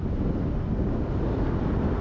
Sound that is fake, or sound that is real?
real